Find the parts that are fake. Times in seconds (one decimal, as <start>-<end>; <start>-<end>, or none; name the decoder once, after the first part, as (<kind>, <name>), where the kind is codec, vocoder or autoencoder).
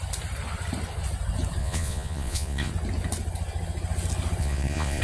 1.6-2.7 (vocoder, Vocos); 4.4-5.0